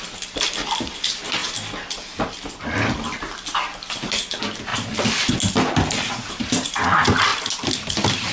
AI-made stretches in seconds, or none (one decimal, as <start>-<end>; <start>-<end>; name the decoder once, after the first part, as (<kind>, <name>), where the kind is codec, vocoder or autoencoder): 1.4-1.9 (vocoder, BigVGAN v2); 4.7-5.3; 7.3-8.3